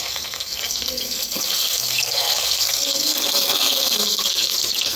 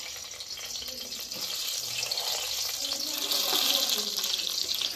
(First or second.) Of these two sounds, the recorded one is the second